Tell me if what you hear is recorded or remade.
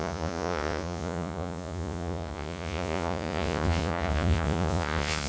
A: remade